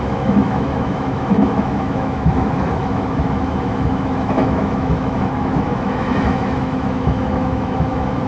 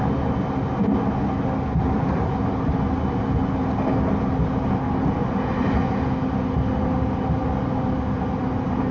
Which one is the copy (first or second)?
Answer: first